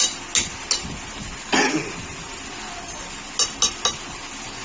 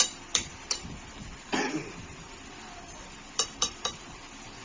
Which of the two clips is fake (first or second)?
second